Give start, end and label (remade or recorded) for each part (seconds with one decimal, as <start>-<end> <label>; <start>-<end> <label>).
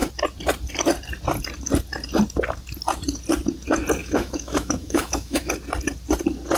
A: 0.0-4.0 recorded; 4.0-5.5 remade; 5.5-6.6 recorded